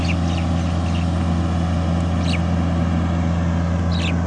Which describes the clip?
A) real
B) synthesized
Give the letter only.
A